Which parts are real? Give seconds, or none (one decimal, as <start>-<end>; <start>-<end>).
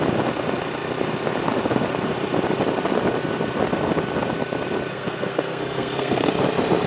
0.0-4.9; 6.3-6.9